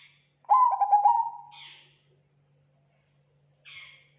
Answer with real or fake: real